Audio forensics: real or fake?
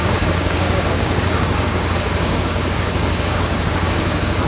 fake